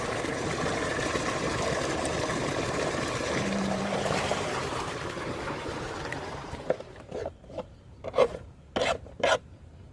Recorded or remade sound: remade